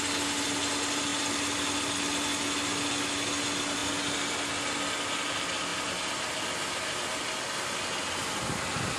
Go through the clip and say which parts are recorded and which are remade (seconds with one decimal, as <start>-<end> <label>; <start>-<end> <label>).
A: 0.0-9.0 recorded